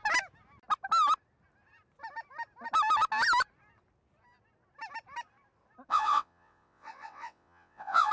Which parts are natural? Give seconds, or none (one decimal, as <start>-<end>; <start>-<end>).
0.0-5.9